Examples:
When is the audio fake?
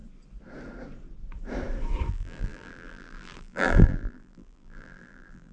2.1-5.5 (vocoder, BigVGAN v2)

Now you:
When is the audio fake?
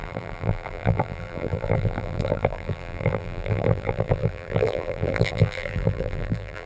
0.0-6.7 (vocoder, BigVGAN v2)